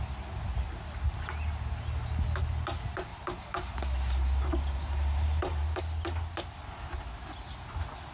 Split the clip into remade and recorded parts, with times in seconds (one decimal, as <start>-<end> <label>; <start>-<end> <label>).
0.0-3.1 recorded; 3.1-5.8 remade; 5.8-8.1 recorded